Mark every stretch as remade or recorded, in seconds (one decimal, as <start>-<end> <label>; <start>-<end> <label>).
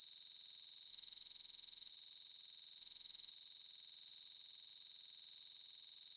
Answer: 0.0-0.9 recorded; 0.9-1.9 remade; 1.9-2.8 recorded; 2.8-3.3 remade; 3.3-6.2 recorded